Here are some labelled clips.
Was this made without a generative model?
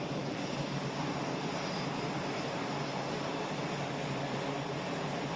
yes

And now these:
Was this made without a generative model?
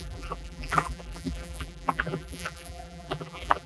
no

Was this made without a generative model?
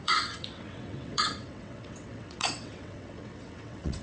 no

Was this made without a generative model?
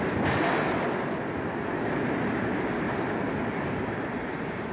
yes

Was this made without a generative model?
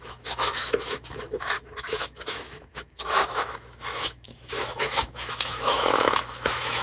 no